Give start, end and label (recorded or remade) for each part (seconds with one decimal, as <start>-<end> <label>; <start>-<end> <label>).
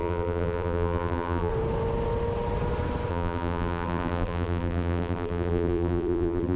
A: 0.0-1.5 remade; 1.5-3.1 recorded; 3.1-6.6 remade